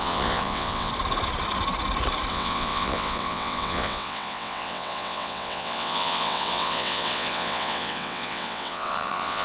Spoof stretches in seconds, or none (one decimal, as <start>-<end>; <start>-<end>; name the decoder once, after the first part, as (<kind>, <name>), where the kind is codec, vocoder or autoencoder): 0.0-0.9 (vocoder, WaveNeXt); 2.3-9.4